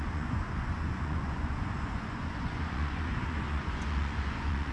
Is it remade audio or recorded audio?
remade